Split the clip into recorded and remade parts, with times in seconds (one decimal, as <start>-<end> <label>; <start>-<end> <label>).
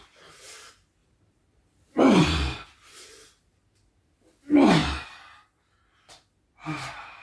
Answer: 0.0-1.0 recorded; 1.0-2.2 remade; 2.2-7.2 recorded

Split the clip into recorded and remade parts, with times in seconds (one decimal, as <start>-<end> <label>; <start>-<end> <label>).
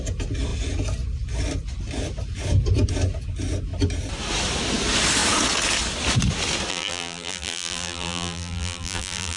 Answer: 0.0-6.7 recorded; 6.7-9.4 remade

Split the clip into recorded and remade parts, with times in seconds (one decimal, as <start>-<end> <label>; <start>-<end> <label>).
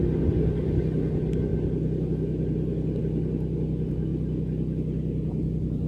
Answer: 0.0-5.9 recorded